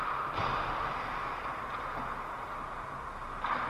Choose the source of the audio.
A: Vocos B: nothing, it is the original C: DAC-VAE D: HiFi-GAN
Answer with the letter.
B